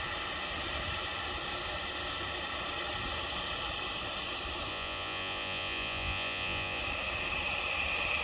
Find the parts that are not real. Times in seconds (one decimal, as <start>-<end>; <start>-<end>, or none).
4.7-6.8